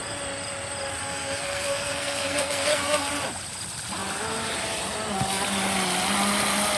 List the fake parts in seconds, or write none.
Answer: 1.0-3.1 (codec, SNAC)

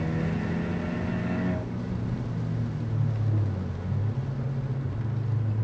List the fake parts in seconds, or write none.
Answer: 1.2-1.9 (codec, DAC)